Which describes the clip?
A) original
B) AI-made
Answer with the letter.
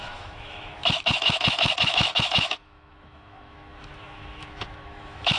B